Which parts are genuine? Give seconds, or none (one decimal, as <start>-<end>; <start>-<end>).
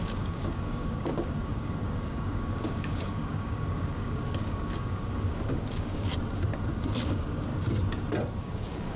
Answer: 6.1-7.0; 7.5-8.4